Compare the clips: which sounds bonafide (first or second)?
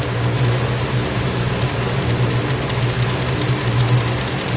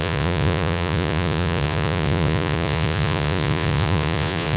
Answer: first